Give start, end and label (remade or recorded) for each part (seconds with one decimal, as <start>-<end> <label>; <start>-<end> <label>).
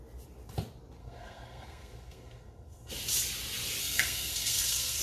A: 0.0-1.0 recorded; 1.0-2.9 remade; 2.9-3.8 recorded; 3.8-5.0 remade